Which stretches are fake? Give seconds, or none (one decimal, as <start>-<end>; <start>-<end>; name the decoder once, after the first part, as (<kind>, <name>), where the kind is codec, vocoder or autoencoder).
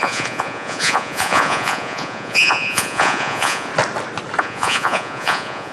0.0-3.7 (vocoder, Vocos); 4.4-5.7